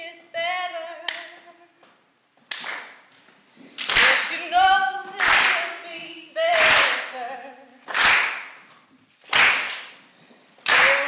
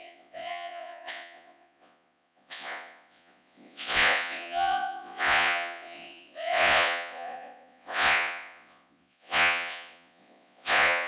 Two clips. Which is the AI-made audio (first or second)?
second